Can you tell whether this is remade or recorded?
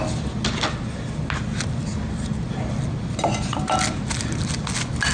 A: recorded